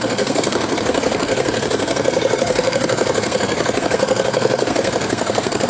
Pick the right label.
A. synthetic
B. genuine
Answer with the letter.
A